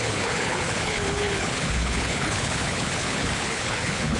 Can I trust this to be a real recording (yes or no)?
no